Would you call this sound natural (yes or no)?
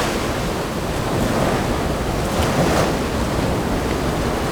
yes